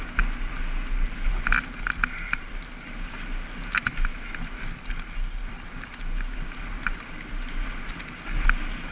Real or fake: real